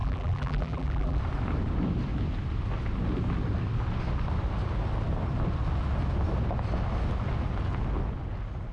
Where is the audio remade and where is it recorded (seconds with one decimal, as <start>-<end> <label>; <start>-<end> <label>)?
0.0-1.2 remade; 1.2-8.7 recorded